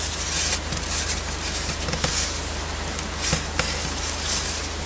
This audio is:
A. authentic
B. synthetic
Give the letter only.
A